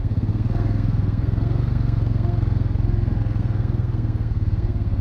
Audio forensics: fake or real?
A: fake